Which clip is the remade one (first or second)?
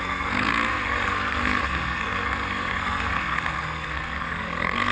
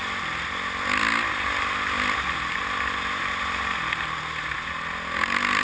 first